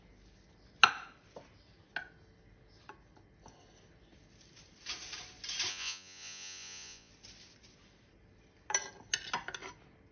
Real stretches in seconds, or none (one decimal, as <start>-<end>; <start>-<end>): 0.0-5.7; 7.1-10.1